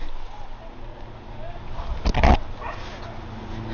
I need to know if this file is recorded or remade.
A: recorded